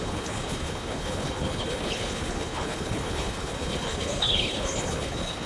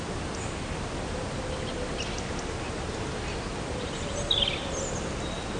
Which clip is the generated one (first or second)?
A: first